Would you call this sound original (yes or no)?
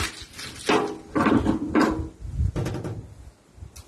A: yes